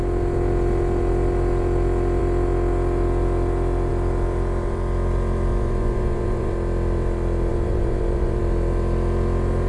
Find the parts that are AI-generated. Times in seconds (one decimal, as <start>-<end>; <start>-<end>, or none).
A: 5.5-6.5; 7.5-8.4